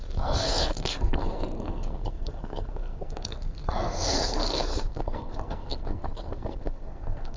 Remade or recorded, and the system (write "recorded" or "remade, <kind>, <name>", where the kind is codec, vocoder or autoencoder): remade, codec, SNAC